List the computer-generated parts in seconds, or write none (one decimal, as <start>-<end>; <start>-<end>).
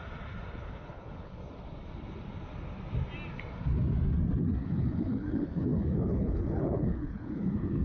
0.6-1.4; 4.6-7.8